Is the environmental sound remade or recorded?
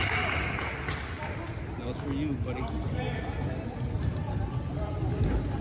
recorded